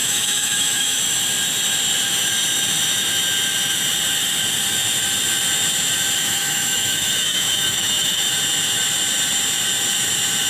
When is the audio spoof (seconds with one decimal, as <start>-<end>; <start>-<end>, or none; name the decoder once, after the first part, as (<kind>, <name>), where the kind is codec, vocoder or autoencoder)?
0.0-1.0 (autoencoder, DAC-VAE); 6.2-8.2